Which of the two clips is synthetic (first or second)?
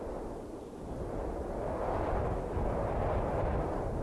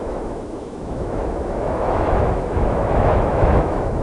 second